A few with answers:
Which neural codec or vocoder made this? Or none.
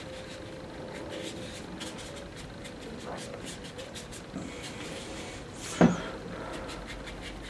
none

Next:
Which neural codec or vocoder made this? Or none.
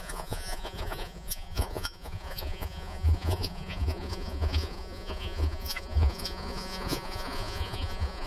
vocoder, Vocos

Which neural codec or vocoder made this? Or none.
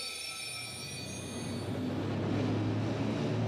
none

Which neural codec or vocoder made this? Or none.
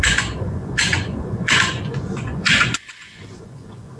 vocoder, Vocos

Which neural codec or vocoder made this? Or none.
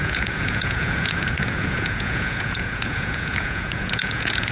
vocoder, Vocos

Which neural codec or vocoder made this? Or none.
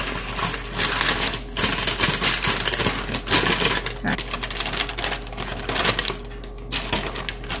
none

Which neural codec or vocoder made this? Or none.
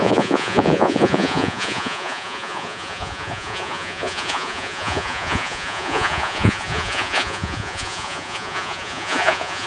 vocoder, Vocos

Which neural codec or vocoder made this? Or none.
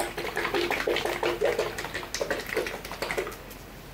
none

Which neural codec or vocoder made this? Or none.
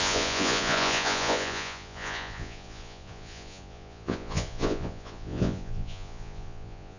vocoder, Vocos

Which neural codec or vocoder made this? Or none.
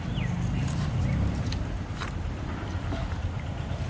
none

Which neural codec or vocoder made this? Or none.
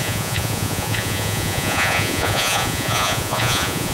vocoder, Vocos